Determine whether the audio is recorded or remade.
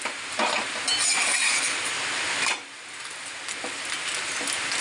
recorded